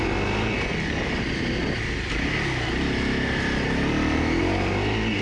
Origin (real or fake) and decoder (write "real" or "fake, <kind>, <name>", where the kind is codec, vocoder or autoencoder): real